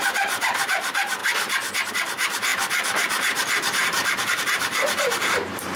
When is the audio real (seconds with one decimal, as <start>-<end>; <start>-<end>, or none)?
1.2-1.9

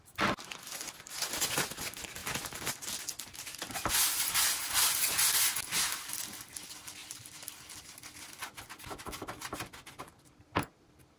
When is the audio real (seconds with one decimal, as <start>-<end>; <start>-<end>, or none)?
0.0-7.0; 7.7-11.2

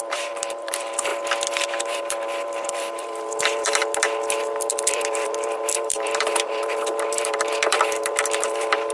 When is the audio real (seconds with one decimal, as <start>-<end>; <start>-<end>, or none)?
1.1-1.7; 3.8-4.7

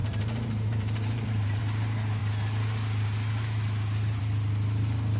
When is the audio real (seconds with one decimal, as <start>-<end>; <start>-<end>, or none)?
1.6-5.2

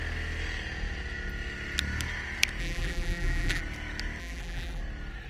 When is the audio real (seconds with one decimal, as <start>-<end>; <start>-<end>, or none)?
0.0-2.6; 3.6-4.2; 4.8-5.3

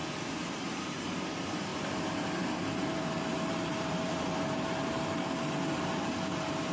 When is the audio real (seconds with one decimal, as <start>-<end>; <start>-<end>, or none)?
0.0-0.6

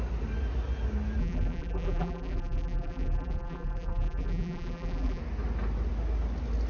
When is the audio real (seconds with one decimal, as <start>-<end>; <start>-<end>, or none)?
0.0-1.2; 5.2-6.7

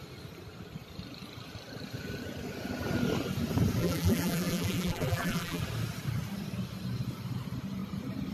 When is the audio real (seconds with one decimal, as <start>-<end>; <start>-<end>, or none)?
0.0-3.8; 5.6-8.3